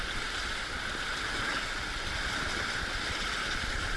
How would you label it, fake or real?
real